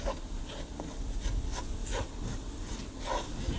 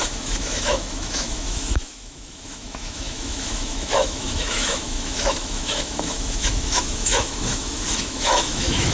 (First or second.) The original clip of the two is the first